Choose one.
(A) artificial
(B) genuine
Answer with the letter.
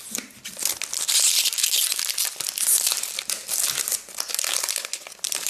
B